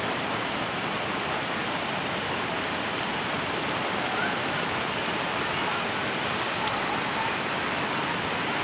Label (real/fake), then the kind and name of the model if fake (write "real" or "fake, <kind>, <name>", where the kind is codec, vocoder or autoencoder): real